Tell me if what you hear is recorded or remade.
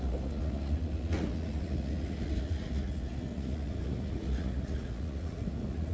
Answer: remade